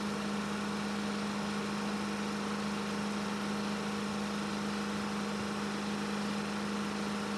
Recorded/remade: recorded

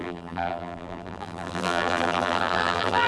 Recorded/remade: remade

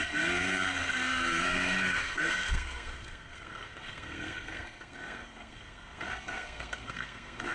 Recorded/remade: remade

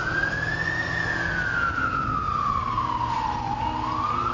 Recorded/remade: recorded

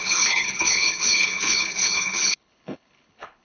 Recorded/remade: remade